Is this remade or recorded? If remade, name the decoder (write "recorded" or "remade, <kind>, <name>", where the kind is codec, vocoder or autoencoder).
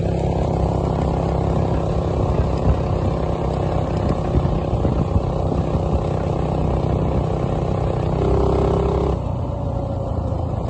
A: recorded